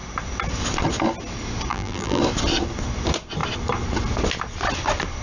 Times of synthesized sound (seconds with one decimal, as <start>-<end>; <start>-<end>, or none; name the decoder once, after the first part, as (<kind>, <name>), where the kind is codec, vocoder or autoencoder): 1.7-2.2 (vocoder, BigVGAN v2)